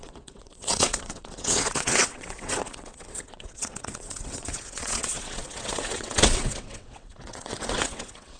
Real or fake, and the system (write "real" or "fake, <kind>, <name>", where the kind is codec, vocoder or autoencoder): fake, vocoder, WaveNeXt